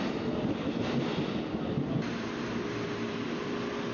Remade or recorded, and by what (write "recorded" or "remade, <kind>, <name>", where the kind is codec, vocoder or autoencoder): recorded